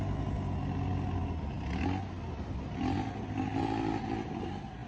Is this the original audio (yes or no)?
yes